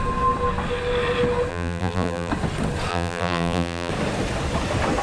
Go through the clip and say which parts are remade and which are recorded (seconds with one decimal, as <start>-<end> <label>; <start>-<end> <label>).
0.0-1.5 recorded; 1.5-2.3 remade; 2.3-2.9 recorded; 2.9-3.9 remade; 3.9-5.0 recorded